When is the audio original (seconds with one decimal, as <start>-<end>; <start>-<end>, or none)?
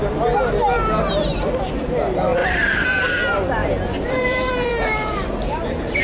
0.0-1.3; 1.9-2.4; 3.0-3.6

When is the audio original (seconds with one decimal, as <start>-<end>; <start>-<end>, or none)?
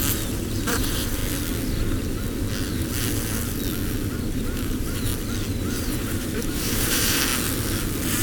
1.2-4.2; 5.1-5.6; 7.3-8.2